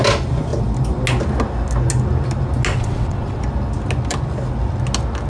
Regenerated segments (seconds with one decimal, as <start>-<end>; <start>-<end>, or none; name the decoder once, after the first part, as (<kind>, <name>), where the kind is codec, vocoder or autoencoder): 2.7-3.4 (vocoder, WaveNeXt)